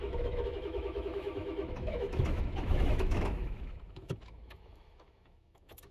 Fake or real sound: fake